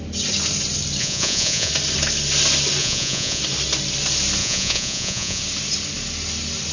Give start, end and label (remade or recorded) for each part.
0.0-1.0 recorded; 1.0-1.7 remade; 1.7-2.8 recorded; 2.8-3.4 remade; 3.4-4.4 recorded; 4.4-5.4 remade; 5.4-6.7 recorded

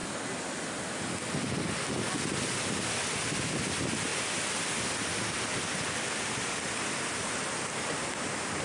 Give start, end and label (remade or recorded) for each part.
0.0-8.6 recorded

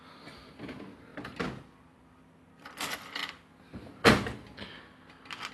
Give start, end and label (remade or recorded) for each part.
0.0-5.5 recorded

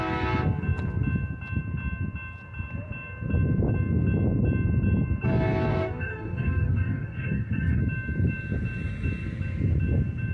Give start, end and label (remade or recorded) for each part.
0.0-5.7 recorded; 5.7-7.8 remade; 7.8-10.3 recorded

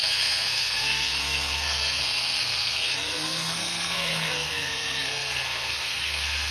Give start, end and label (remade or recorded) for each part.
0.0-6.5 remade

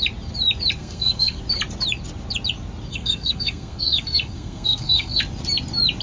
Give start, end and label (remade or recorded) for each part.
0.0-0.8 recorded; 0.8-1.4 remade; 1.4-2.9 recorded; 2.9-5.2 remade; 5.2-6.0 recorded

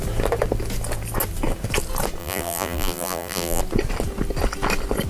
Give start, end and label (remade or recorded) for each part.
0.0-2.2 recorded; 2.2-3.6 remade; 3.6-5.1 recorded